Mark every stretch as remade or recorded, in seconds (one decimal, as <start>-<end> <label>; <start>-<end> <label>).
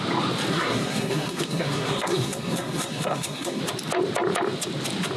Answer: 0.0-0.5 recorded; 0.5-3.6 remade; 3.6-5.2 recorded